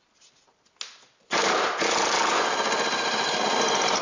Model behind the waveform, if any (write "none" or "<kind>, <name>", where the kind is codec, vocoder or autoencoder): none